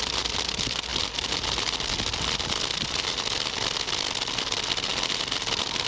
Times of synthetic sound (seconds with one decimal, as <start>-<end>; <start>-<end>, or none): none